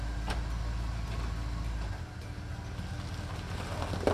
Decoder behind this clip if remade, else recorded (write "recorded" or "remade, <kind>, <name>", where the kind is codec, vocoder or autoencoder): recorded